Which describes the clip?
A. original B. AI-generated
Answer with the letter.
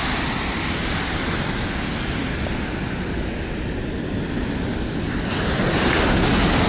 A